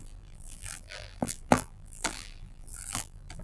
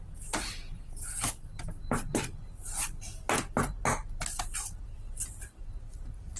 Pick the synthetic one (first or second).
first